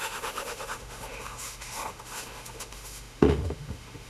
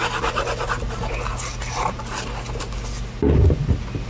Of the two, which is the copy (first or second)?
first